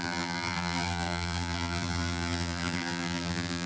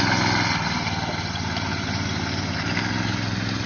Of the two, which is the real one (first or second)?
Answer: second